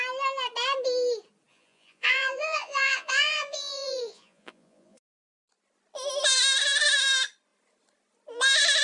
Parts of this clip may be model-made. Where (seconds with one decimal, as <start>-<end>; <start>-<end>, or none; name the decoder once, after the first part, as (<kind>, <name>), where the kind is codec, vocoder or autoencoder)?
1.5-5.0 (vocoder, Vocos)